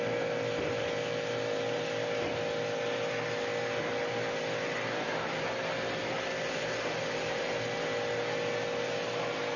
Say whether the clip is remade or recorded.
recorded